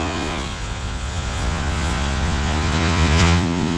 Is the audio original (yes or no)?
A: no